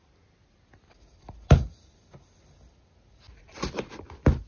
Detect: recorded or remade recorded